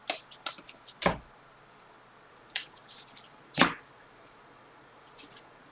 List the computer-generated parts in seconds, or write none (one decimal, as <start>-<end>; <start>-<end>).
2.3-2.8; 3.4-5.7